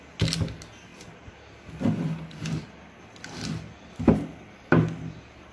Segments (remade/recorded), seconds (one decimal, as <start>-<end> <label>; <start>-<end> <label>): 0.0-5.5 recorded